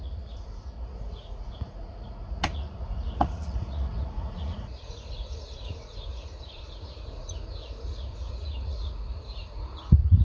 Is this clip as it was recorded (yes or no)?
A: no